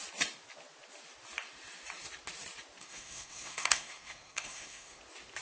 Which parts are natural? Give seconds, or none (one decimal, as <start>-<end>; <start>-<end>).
0.0-2.8; 5.0-5.4